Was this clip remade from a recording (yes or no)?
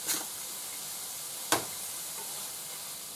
no